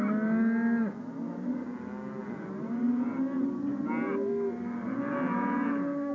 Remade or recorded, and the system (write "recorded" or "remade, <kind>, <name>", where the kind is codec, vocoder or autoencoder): recorded